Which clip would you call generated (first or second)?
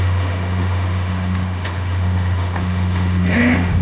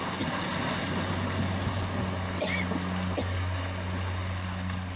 first